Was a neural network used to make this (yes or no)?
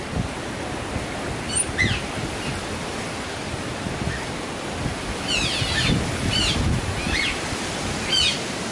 no